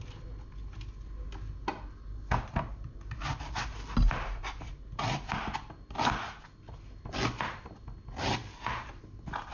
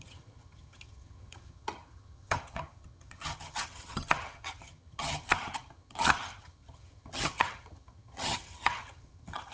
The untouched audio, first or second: first